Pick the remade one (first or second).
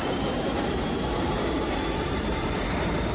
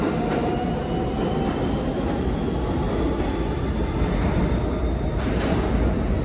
first